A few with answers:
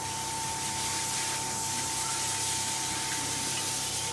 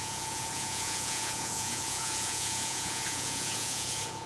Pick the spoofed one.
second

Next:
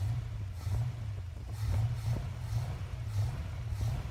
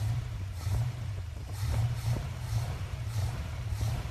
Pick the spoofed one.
second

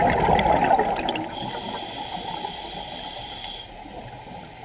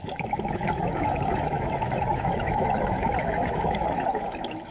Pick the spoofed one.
second